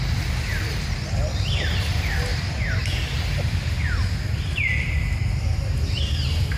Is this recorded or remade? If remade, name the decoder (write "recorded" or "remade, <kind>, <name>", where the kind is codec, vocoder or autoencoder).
recorded